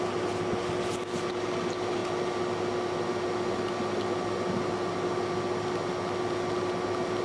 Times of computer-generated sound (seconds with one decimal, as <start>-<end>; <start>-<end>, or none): none